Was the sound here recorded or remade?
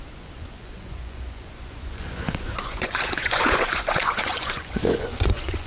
remade